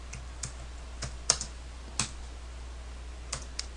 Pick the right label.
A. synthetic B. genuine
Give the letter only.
B